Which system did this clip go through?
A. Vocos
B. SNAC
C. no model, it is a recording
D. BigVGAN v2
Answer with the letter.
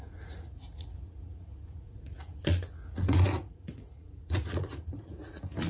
A